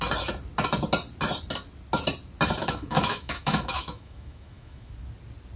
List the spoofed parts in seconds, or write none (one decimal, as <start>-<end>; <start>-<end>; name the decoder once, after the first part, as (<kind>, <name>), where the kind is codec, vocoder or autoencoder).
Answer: 2.6-4.9 (autoencoder, DAC-VAE)